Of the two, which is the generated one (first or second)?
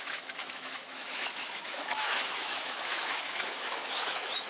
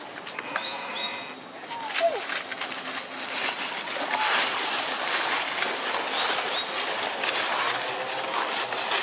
first